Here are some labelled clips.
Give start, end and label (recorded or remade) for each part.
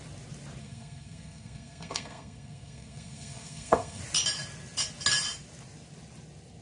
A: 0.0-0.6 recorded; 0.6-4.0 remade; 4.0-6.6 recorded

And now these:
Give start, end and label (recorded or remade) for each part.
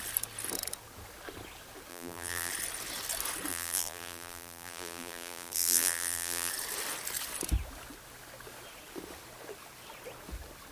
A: 0.0-1.9 recorded; 1.9-2.5 remade; 2.5-3.5 recorded; 3.5-6.5 remade; 6.5-10.7 recorded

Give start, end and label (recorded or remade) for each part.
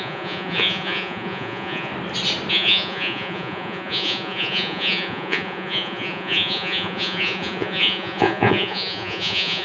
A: 0.0-1.9 remade; 1.9-2.5 recorded; 2.5-9.6 remade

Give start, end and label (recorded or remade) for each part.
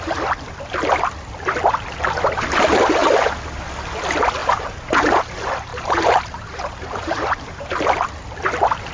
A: 0.0-4.4 recorded; 4.4-5.2 remade; 5.2-5.7 recorded; 5.7-7.7 remade; 7.7-8.9 recorded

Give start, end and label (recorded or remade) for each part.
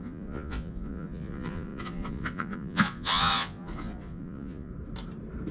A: 0.0-4.7 remade; 4.7-5.5 recorded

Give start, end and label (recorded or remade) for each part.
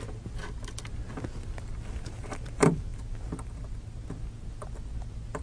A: 0.0-5.4 recorded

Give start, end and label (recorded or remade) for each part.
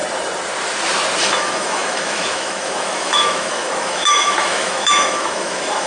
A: 0.0-1.2 recorded; 1.2-5.9 remade